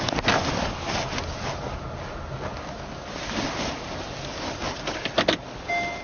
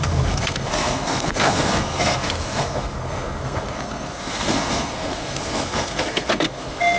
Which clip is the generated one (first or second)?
second